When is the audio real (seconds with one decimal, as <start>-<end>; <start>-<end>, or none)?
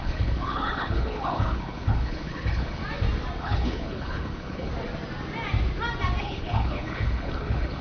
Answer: 2.8-3.4; 4.7-6.2